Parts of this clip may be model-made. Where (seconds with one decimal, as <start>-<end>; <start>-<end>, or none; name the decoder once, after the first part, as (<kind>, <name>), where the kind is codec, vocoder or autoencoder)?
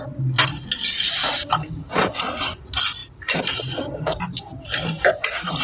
1.3-2.0 (vocoder, BigVGAN v2); 3.0-5.6